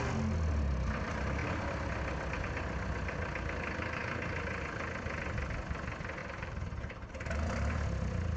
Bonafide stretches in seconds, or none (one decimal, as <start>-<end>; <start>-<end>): 0.0-6.2; 7.1-8.4